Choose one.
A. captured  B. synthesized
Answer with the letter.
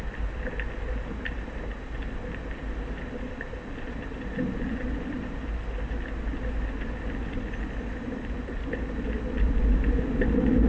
A